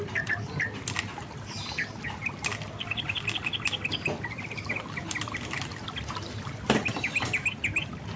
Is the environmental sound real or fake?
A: real